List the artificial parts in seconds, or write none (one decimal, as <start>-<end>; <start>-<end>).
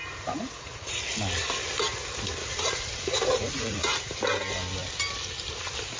0.0-1.0; 2.4-4.0